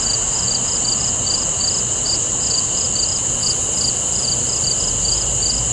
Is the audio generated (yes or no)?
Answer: no